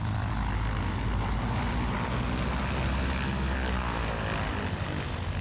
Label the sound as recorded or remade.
recorded